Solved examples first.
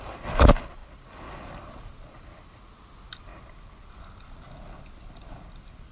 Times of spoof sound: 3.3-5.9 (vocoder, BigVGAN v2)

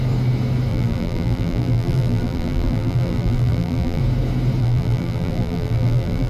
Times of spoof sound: 0.7-4.0 (vocoder, BigVGAN v2); 4.6-6.3